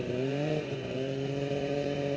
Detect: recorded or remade remade